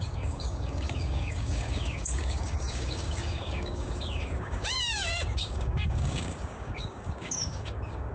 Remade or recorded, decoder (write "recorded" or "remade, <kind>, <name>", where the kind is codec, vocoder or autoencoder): remade, codec, DAC